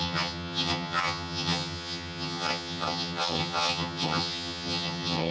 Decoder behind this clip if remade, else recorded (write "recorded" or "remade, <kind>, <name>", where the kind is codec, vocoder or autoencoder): remade, vocoder, HiFi-GAN